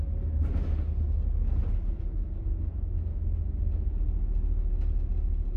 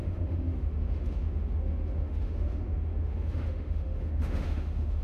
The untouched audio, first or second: first